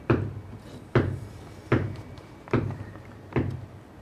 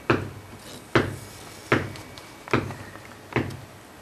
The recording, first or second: second